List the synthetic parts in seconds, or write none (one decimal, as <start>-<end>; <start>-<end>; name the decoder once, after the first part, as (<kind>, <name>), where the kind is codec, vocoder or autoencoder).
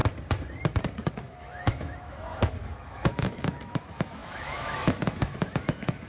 1.1-6.1 (autoencoder, DAC-VAE)